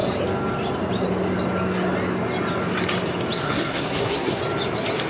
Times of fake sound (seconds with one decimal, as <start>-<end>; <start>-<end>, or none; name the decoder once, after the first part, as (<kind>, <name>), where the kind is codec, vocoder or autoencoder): 3.4-4.4 (codec, SNAC)